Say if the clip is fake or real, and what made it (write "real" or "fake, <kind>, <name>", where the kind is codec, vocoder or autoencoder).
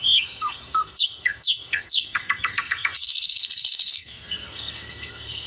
fake, codec, SNAC